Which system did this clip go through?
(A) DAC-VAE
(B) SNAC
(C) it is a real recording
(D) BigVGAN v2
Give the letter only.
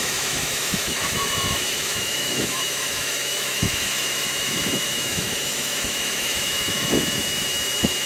A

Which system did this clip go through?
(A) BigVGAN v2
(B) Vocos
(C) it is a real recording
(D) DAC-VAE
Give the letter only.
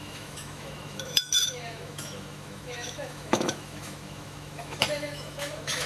D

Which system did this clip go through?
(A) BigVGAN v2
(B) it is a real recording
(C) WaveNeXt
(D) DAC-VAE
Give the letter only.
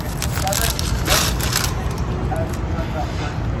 B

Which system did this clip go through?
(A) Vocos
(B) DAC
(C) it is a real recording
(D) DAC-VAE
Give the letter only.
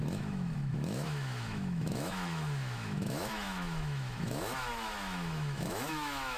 D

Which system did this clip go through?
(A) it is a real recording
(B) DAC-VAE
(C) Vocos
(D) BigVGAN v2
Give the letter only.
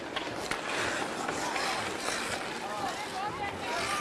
A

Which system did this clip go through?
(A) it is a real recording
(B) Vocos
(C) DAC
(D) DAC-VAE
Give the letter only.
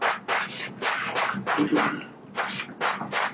A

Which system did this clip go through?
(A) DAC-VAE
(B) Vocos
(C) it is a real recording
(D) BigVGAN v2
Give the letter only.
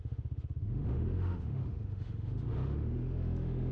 A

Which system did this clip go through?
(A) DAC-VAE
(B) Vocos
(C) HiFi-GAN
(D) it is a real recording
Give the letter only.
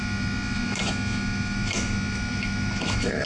A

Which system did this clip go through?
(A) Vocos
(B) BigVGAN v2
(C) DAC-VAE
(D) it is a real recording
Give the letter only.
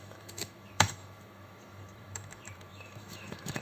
C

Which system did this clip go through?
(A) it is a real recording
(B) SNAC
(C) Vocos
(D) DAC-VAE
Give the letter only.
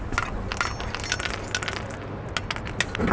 A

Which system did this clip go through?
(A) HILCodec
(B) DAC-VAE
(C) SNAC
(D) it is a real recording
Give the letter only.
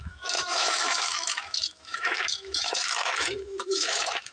B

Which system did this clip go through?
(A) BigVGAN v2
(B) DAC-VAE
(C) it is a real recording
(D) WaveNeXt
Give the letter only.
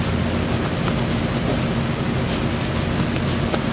C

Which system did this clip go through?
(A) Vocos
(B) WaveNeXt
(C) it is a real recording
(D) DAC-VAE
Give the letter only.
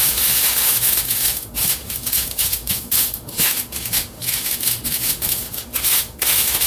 D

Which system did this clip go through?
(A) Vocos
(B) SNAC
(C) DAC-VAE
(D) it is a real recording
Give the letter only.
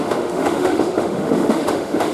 C